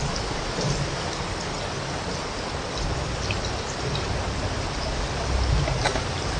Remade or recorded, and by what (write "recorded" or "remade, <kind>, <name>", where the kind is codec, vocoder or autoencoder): recorded